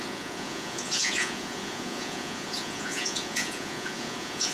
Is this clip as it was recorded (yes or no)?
no